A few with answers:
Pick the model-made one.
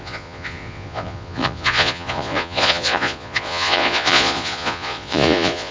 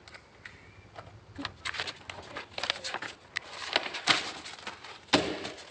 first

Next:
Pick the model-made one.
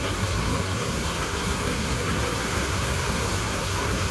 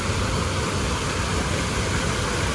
first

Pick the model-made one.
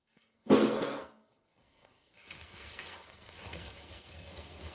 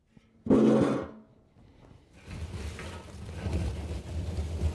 first